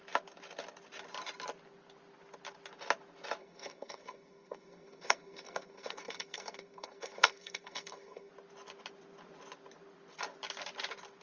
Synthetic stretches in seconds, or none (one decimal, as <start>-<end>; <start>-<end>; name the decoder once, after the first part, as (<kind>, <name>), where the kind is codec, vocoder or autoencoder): 3.4-8.3 (codec, SNAC)